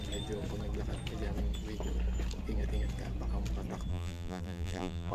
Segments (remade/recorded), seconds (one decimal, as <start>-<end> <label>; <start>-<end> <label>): 0.0-3.9 recorded; 3.9-5.1 remade